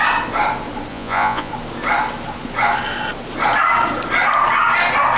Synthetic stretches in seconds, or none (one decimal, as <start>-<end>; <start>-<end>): 0.9-1.5